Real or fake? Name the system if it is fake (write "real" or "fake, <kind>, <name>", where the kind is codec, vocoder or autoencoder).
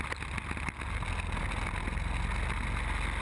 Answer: real